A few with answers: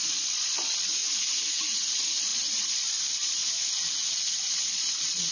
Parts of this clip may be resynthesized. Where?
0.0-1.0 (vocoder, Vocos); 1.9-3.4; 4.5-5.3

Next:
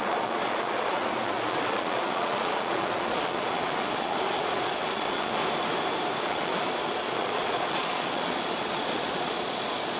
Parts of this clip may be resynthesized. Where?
0.0-5.4 (vocoder, Vocos); 6.2-10.0

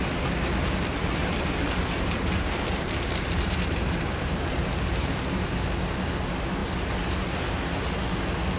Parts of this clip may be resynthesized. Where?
1.2-6.1 (vocoder, BigVGAN v2)

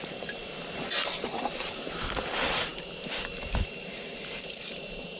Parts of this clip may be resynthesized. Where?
0.0-0.4 (vocoder, BigVGAN v2); 2.3-5.2

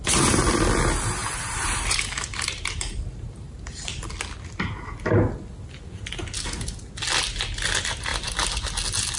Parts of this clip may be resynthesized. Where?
1.2-3.9 (vocoder, BigVGAN v2); 8.1-8.7